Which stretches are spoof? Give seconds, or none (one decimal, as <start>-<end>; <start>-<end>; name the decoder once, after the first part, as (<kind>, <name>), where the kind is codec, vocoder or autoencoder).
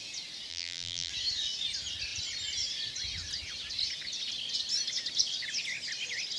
0.5-1.1 (vocoder, BigVGAN v2)